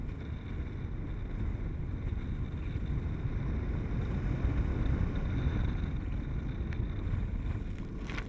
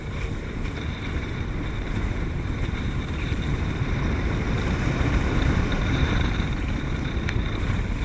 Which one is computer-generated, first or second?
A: second